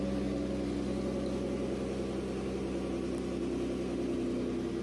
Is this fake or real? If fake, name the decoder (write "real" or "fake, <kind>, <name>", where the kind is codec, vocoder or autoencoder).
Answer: real